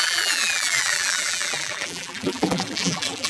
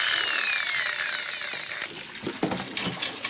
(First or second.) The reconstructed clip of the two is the first